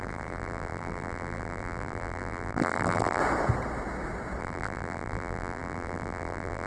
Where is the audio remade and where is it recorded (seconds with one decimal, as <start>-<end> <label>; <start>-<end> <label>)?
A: 0.0-3.2 remade; 3.2-4.4 recorded; 4.4-6.7 remade